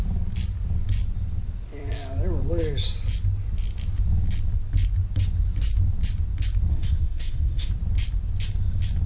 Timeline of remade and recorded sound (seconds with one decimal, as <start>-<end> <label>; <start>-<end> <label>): 0.0-6.7 recorded; 6.7-7.7 remade; 7.7-9.1 recorded